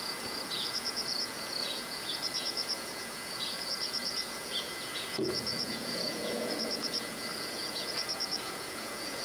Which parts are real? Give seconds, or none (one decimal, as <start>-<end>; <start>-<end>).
none